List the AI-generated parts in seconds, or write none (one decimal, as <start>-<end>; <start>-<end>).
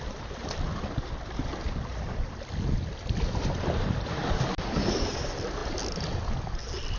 4.1-5.1